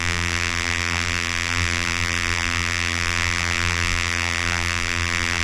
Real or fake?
fake